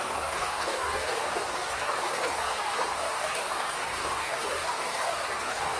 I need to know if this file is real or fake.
fake